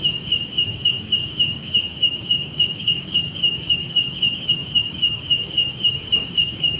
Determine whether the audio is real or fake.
fake